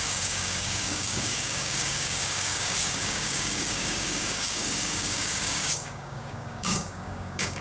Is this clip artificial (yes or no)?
yes